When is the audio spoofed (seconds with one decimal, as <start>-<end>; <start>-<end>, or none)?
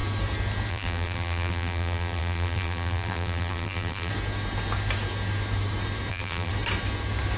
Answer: 0.7-4.1; 6.1-6.5